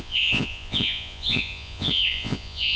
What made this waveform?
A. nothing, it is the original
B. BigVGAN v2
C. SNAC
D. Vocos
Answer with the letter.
D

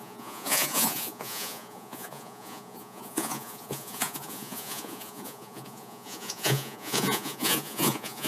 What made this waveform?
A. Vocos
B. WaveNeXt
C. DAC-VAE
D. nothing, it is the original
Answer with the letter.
A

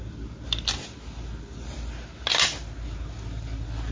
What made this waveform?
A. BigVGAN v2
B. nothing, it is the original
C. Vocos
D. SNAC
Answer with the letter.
B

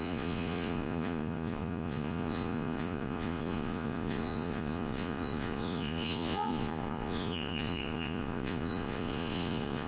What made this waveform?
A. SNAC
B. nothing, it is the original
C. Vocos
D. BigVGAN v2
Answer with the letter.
C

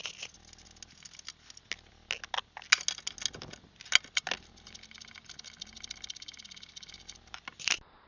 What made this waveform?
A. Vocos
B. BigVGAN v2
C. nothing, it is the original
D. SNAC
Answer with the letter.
C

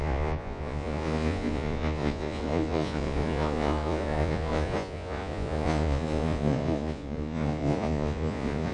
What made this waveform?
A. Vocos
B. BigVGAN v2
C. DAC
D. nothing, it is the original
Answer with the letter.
A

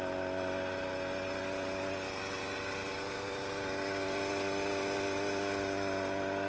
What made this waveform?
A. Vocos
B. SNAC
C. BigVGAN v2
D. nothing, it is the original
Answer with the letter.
D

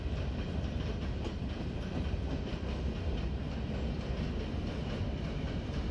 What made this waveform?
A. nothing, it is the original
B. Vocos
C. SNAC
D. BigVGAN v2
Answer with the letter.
A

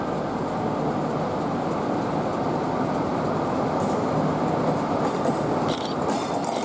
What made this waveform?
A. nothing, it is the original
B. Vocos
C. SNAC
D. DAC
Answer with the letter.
A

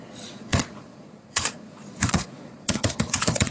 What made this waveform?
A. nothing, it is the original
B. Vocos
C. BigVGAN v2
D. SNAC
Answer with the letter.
B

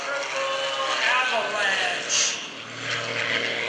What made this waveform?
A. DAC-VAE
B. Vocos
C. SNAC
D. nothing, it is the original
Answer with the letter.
D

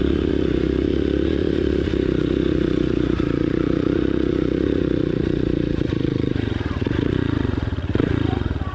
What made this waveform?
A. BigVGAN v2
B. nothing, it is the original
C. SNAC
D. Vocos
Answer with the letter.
D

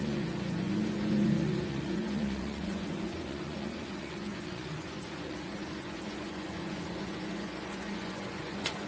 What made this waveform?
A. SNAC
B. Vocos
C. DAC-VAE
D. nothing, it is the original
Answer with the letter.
B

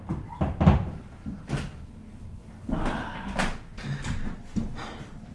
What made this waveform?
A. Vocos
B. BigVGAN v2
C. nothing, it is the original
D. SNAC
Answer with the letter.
C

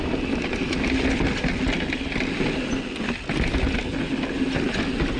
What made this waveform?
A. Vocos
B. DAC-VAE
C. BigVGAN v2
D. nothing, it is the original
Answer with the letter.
D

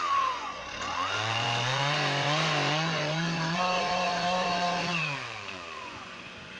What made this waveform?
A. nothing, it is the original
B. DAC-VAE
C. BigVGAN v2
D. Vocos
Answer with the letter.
D